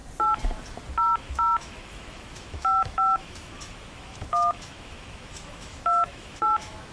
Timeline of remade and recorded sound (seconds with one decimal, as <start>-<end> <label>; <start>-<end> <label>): 0.0-1.3 recorded; 1.3-6.9 remade